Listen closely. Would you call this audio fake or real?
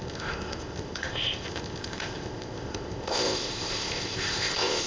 fake